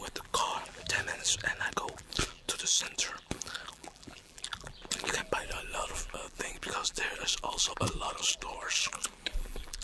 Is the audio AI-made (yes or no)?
yes